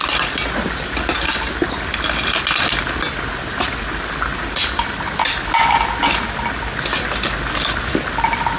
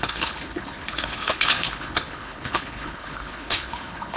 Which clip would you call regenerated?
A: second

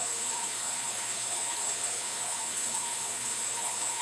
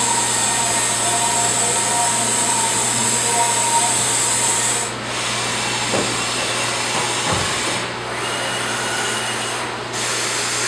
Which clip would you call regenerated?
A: first